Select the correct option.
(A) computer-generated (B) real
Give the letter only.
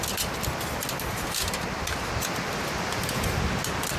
B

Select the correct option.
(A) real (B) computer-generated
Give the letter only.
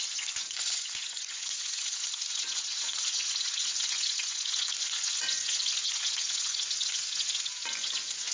B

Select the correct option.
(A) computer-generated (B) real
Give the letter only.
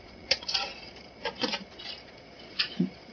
A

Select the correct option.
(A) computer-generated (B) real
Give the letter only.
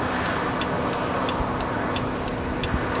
B